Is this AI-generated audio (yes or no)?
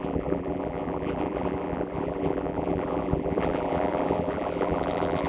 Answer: yes